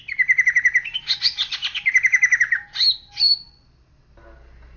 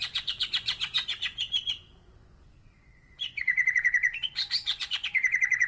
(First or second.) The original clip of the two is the first